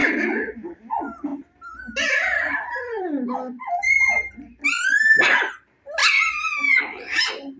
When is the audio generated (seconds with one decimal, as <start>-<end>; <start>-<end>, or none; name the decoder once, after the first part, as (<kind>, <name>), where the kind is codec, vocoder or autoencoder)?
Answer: 0.0-1.3 (vocoder, BigVGAN v2); 2.5-6.0; 6.8-7.6